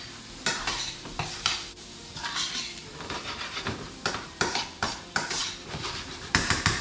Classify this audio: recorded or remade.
remade